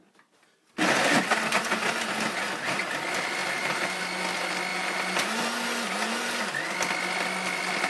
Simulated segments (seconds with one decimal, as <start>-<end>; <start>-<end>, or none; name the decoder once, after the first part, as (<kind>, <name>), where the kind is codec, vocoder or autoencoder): 3.4-4.0 (vocoder, BigVGAN v2); 4.7-5.4